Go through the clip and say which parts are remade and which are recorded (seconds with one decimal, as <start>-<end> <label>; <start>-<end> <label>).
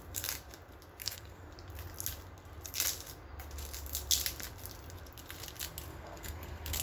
0.0-1.0 recorded; 1.0-1.5 remade; 1.5-5.9 recorded; 5.9-6.8 remade